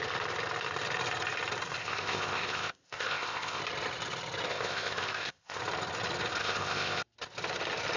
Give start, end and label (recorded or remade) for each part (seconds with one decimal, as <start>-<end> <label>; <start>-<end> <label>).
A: 0.0-1.8 recorded; 1.8-3.6 remade; 3.6-4.5 recorded; 4.5-5.6 remade; 5.6-6.4 recorded; 6.4-7.0 remade; 7.0-8.0 recorded